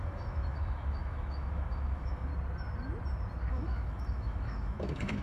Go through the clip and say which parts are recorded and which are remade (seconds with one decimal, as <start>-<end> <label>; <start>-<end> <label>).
0.0-2.3 remade; 2.3-3.5 recorded; 3.5-5.2 remade